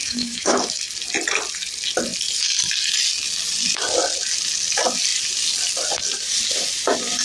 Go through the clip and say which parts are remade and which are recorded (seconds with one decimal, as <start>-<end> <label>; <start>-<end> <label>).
0.0-0.8 remade; 0.8-7.2 recorded